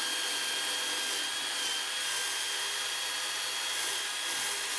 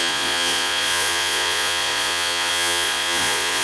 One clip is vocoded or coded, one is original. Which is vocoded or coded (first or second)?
second